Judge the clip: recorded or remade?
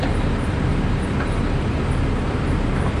recorded